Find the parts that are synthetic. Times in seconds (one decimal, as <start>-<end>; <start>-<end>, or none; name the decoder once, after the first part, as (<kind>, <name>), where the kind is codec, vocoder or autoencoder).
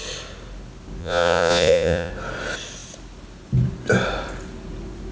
1.0-2.1 (vocoder, Vocos)